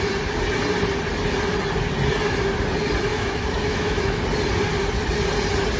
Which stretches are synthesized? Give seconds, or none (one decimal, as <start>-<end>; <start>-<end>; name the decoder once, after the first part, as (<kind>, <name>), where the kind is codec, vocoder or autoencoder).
3.1-4.2 (autoencoder, DAC-VAE)